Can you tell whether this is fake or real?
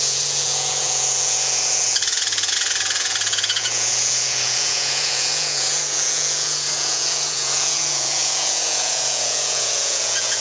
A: fake